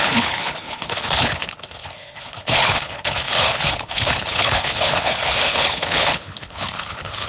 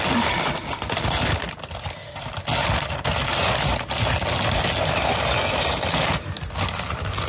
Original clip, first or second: second